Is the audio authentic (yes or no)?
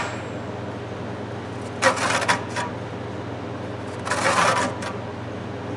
yes